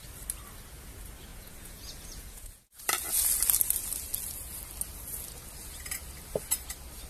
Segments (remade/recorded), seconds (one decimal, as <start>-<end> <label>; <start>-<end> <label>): 0.0-1.3 recorded; 1.3-2.8 remade; 2.8-7.1 recorded